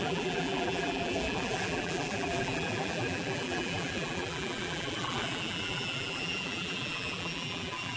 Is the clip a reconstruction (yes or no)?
yes